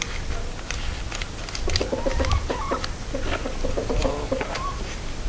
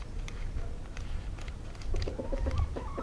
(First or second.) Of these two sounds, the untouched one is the first